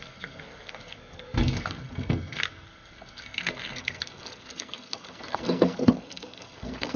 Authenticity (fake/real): fake